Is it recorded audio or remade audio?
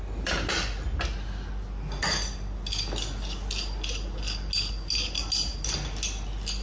recorded